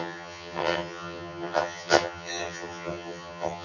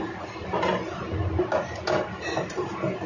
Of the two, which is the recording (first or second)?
second